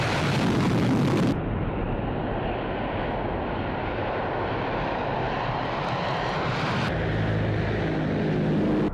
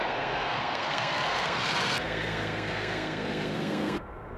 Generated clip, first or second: second